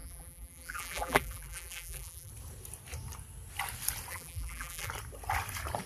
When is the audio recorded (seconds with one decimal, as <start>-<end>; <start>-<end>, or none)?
2.3-4.1; 4.9-5.9